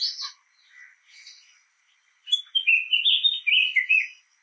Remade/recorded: recorded